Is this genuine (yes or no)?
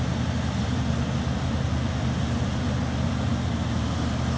yes